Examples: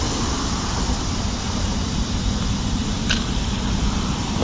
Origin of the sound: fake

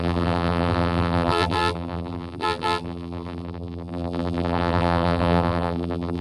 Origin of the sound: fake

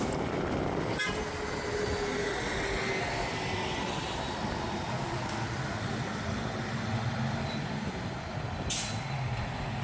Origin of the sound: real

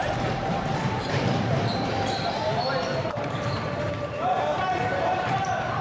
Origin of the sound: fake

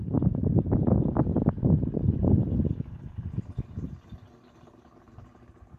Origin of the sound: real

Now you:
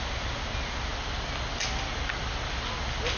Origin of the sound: real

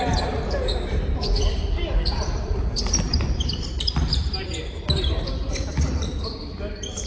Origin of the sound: fake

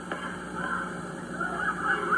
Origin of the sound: real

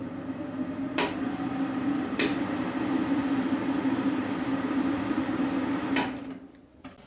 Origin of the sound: fake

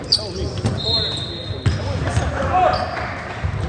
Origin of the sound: real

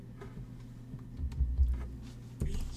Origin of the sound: real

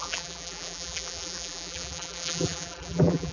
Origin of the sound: fake